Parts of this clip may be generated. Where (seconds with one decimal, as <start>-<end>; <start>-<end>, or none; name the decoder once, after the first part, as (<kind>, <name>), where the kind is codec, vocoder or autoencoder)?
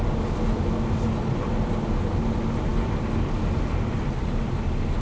none